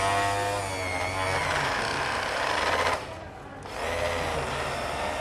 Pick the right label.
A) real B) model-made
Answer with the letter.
A